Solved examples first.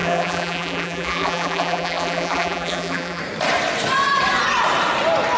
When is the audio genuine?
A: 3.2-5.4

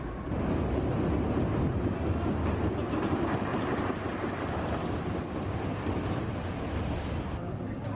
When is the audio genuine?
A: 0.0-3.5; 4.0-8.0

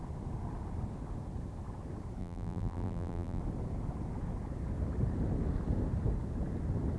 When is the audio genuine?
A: 0.0-2.2; 3.4-7.0